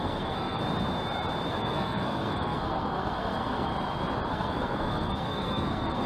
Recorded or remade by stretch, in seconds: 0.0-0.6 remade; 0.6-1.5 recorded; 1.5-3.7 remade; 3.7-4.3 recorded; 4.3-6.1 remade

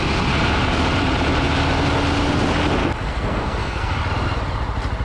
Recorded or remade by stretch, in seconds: 0.0-2.8 recorded; 2.8-4.0 remade; 4.0-5.0 recorded